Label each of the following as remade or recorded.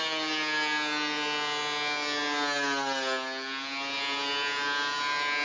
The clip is recorded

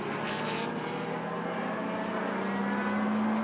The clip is recorded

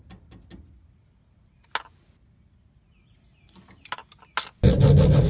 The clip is recorded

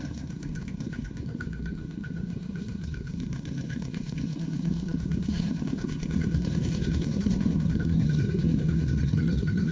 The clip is remade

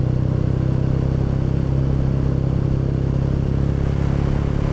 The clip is recorded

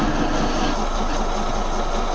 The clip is recorded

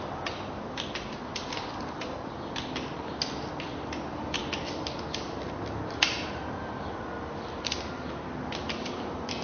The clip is recorded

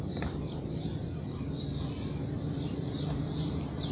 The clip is recorded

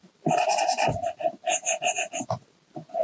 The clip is remade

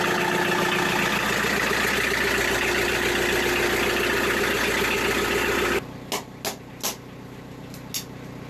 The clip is recorded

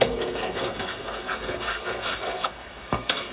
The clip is remade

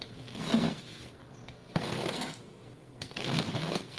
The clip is remade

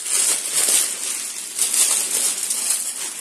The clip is recorded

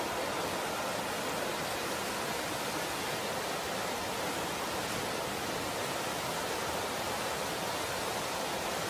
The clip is recorded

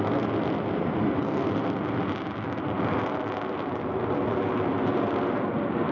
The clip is recorded